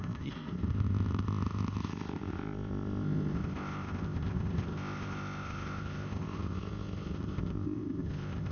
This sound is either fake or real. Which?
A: fake